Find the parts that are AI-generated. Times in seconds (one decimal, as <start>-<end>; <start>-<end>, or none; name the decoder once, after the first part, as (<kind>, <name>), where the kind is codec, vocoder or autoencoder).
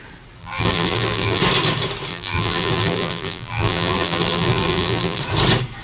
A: 0.4-1.4 (vocoder, BigVGAN v2); 2.1-5.2